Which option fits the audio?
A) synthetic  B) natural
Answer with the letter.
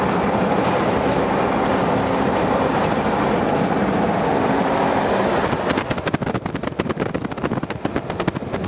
B